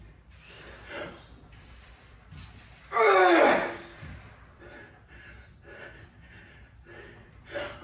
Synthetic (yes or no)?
no